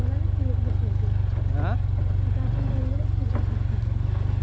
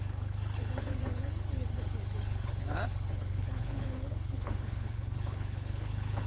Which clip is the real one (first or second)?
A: first